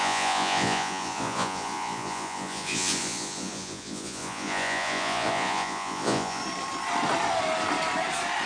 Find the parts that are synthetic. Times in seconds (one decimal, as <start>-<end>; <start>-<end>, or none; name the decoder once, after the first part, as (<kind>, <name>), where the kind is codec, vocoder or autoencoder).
0.0-6.4 (vocoder, Vocos)